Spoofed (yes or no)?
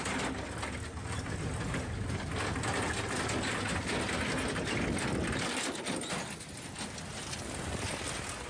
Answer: no